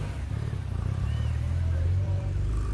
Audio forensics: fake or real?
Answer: fake